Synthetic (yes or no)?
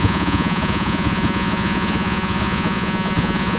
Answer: yes